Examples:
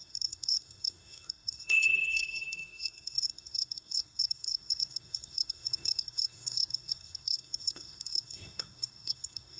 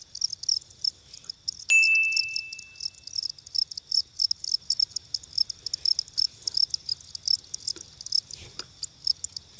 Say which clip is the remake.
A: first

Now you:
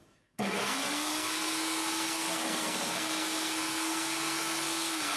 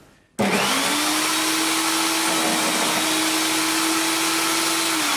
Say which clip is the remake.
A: first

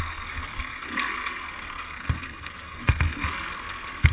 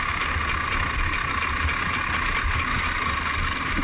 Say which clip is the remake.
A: first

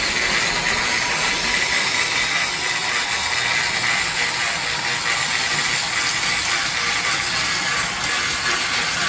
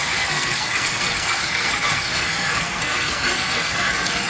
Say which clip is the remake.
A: second